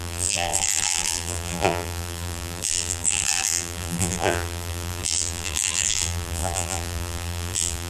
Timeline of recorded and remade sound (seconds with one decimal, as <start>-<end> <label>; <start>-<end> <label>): 0.0-7.9 remade

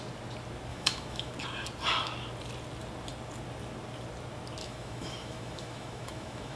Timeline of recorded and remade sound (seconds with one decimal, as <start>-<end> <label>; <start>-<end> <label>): 0.0-0.7 recorded; 0.7-1.3 remade; 1.3-4.6 recorded; 4.6-6.6 remade